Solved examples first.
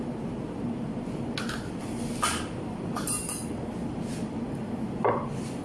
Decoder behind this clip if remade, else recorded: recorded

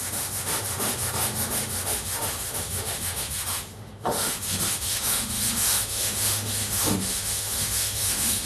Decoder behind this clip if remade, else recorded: remade, autoencoder, DAC-VAE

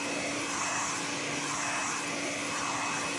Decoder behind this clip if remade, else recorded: recorded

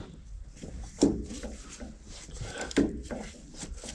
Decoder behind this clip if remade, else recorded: recorded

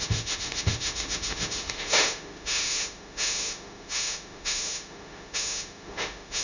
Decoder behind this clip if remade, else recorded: remade, autoencoder, DAC-VAE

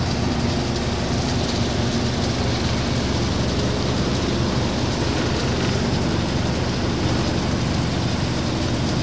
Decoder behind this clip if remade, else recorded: recorded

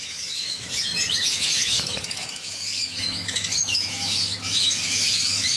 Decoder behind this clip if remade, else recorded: remade, autoencoder, DAC-VAE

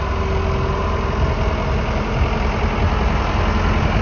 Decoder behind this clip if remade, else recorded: recorded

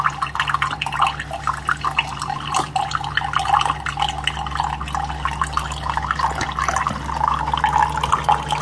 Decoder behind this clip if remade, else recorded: recorded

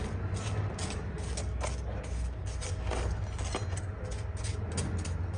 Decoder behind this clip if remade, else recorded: recorded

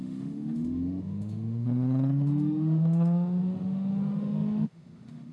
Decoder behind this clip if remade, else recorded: remade, autoencoder, DAC-VAE